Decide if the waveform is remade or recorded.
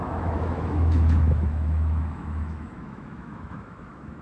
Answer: remade